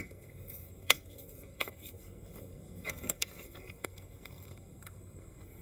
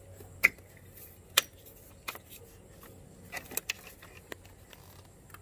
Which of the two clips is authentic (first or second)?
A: second